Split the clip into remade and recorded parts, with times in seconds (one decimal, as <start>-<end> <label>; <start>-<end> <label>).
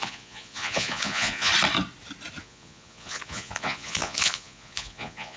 0.0-1.5 remade; 1.5-2.4 recorded; 2.4-5.4 remade